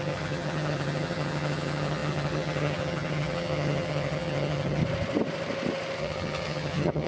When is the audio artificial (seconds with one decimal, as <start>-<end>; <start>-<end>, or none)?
0.0-4.8; 6.0-7.1